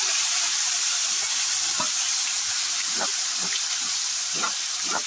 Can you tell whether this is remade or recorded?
remade